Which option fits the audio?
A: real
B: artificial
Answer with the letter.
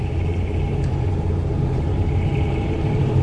B